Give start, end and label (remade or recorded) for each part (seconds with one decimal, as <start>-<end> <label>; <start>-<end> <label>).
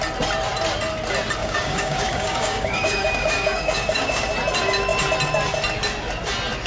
0.0-1.4 recorded; 1.4-4.3 remade; 4.3-6.7 recorded